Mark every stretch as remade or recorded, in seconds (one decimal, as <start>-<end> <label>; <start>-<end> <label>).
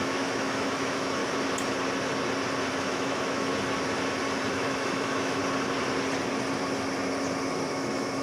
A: 0.0-1.2 remade; 1.2-2.7 recorded; 2.7-3.5 remade; 3.5-4.5 recorded; 4.5-5.4 remade; 5.4-7.7 recorded; 7.7-8.2 remade